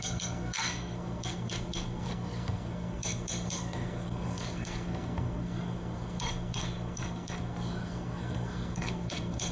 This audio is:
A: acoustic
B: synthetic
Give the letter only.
B